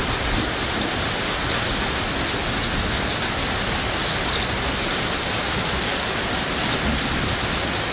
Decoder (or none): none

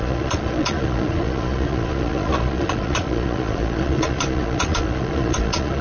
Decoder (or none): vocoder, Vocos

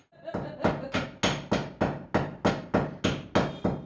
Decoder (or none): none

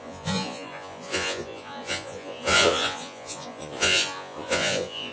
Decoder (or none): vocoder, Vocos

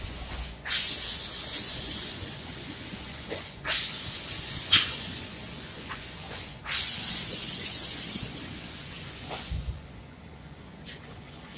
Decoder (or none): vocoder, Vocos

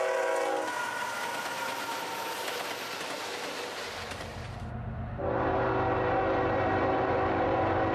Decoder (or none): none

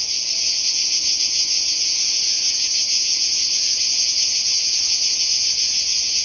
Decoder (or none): vocoder, Vocos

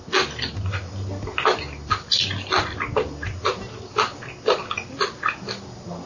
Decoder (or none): none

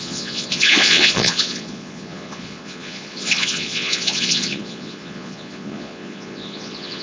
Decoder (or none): vocoder, Vocos